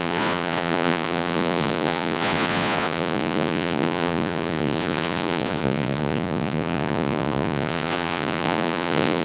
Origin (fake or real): fake